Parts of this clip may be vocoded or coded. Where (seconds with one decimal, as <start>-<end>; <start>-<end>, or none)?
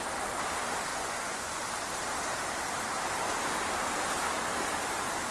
0.9-1.6